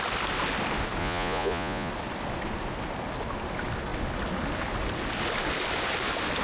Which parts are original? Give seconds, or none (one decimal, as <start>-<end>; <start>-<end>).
0.0-1.0; 1.9-6.4